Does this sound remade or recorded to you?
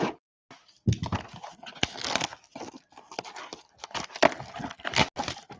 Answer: recorded